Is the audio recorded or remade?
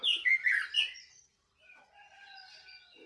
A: recorded